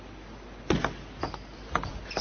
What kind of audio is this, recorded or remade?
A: recorded